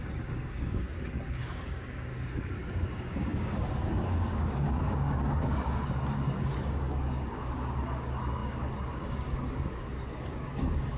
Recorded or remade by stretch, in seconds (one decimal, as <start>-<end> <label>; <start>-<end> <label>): 0.0-11.0 remade

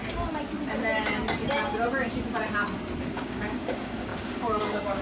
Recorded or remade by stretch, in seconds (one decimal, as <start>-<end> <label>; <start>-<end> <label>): 0.0-3.0 recorded; 3.0-5.0 remade